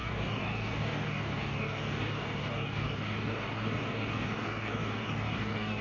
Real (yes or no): no